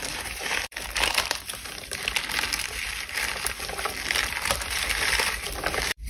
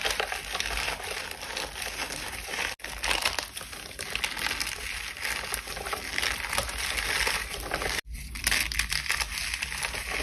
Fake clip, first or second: first